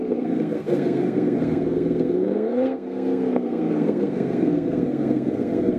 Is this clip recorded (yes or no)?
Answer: no